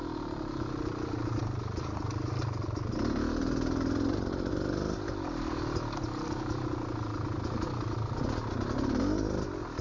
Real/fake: real